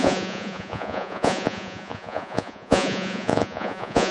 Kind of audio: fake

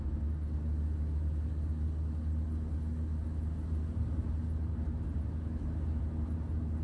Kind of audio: real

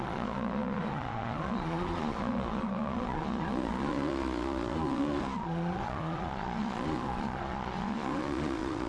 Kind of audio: fake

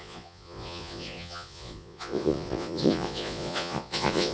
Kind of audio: fake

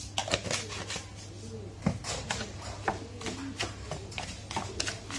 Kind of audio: real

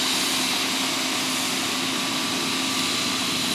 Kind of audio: real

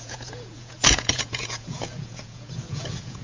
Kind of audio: fake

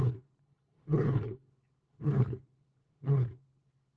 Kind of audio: fake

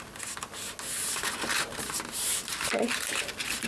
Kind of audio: real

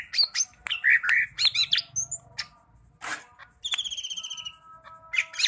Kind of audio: real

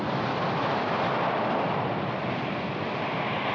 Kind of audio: real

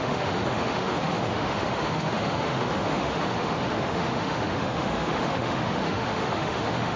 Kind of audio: fake